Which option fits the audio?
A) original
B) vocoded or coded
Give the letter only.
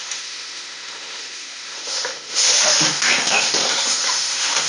B